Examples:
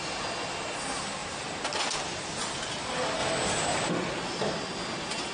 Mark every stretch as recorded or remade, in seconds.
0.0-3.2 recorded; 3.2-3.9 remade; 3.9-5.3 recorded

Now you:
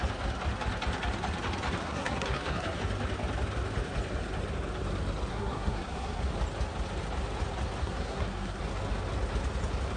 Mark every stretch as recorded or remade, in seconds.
0.0-1.8 recorded; 1.8-2.8 remade; 2.8-5.3 recorded; 5.3-6.3 remade; 6.3-7.8 recorded; 7.8-8.6 remade; 8.6-10.0 recorded

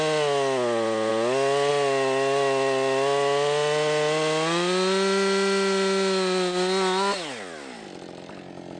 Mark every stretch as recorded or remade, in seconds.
0.0-8.8 recorded